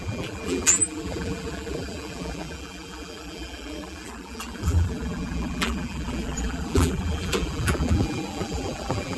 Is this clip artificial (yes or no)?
yes